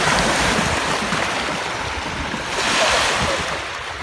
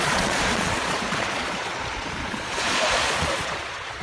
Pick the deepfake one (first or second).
second